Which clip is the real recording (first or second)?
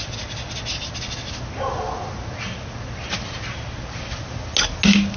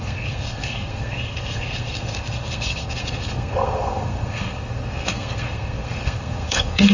first